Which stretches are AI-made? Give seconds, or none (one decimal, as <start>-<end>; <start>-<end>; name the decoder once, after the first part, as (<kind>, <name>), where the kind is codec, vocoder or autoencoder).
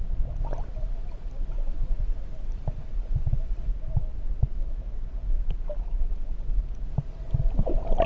none